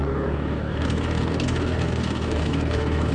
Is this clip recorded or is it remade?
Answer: remade